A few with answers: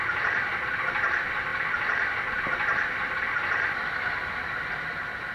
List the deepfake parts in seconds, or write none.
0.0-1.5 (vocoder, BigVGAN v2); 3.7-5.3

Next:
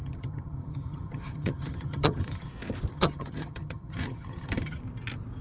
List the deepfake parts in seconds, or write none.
0.0-2.5 (vocoder, HiFi-GAN); 2.9-4.8

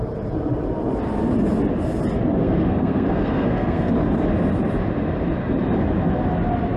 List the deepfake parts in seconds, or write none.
2.4-3.9 (codec, SNAC)

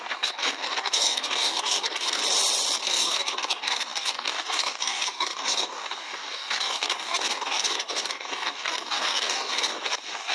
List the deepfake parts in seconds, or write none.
0.0-2.2 (codec, DAC); 2.8-10.3